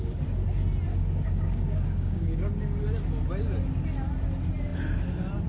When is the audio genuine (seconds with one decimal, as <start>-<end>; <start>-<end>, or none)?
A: 0.0-0.9; 2.5-5.5